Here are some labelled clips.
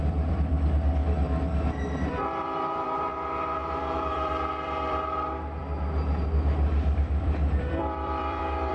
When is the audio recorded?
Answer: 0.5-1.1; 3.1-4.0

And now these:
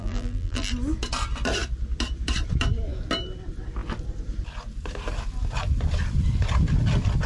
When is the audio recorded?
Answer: 0.7-7.3

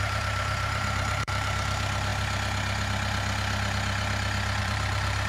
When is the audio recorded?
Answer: 2.1-4.6

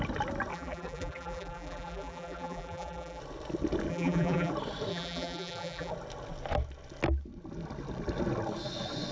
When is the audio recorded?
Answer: 0.0-0.5; 3.2-3.9; 4.5-4.9; 5.9-9.1

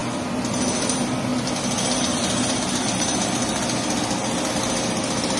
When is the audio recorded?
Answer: 0.0-5.4

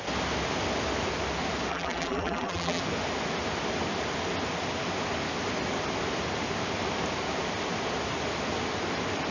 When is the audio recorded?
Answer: 0.0-1.7; 2.8-9.3